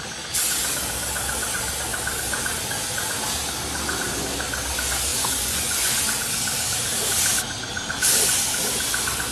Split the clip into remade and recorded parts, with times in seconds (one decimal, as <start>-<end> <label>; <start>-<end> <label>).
0.0-5.1 recorded; 5.1-6.0 remade; 6.0-9.3 recorded